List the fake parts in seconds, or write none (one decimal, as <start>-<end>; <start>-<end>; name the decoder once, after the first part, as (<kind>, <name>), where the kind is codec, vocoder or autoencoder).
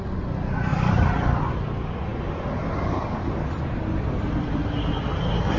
0.7-1.5 (vocoder, BigVGAN v2)